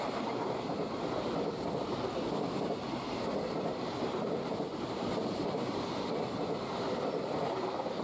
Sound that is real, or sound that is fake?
real